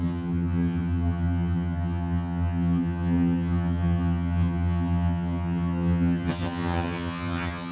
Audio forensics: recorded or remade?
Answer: remade